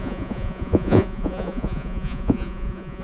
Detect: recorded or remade remade